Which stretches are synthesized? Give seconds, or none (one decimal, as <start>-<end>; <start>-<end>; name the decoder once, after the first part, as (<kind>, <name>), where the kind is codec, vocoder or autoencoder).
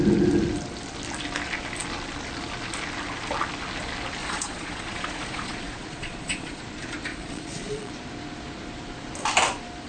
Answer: 4.2-6.6 (vocoder, Vocos); 7.1-7.9